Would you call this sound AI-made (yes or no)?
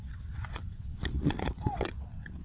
yes